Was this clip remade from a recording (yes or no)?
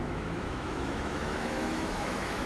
yes